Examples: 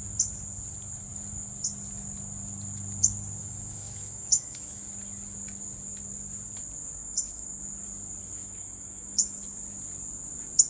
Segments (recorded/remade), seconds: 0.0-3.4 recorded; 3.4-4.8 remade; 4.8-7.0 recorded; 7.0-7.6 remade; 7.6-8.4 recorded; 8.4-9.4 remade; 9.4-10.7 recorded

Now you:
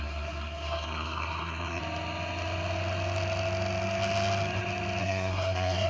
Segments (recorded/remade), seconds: 0.0-1.8 remade; 1.8-5.0 recorded; 5.0-5.9 remade

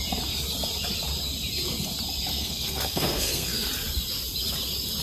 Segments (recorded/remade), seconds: 0.0-2.3 recorded; 2.3-3.7 remade; 3.7-5.0 recorded